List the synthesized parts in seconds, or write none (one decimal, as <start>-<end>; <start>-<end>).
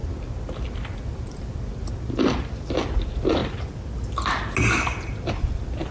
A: none